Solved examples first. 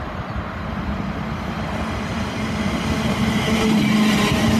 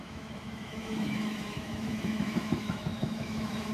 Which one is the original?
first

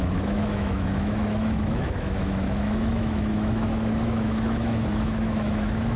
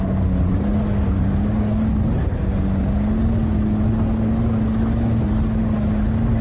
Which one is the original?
second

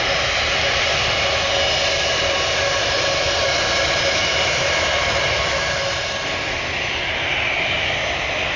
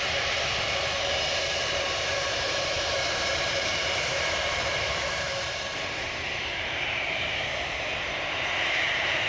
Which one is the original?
first